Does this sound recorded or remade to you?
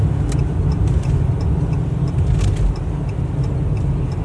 recorded